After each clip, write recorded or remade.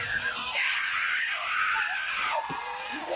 recorded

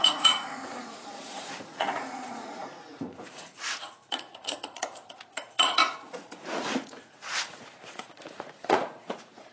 remade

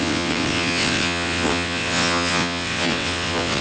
remade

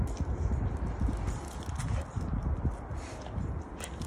recorded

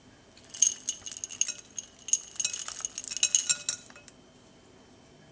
recorded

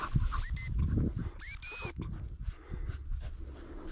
recorded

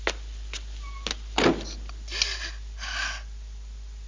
recorded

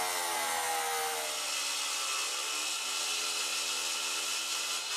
recorded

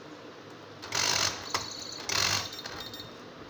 recorded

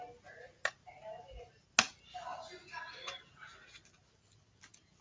recorded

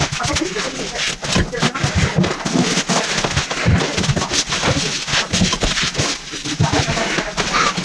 recorded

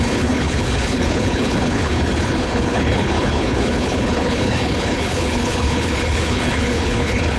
remade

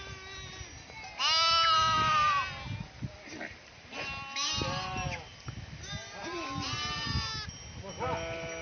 recorded